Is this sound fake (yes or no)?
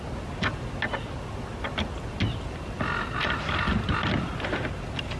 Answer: no